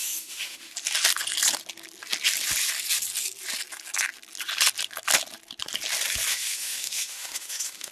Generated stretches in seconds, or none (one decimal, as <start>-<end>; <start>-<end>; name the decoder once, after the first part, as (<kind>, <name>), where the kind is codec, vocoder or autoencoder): 0.0-0.7 (autoencoder, DAC-VAE); 6.3-7.9